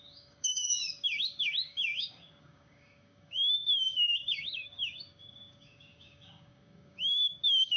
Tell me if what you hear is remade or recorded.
remade